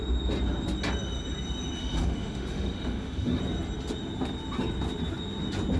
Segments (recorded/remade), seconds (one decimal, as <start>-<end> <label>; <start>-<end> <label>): 0.0-1.8 recorded; 1.8-3.4 remade; 3.4-5.8 recorded